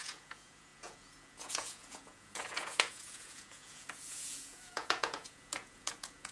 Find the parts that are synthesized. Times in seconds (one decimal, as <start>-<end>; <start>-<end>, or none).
0.0-6.3